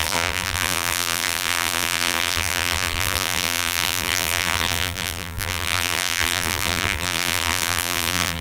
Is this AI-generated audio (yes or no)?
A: yes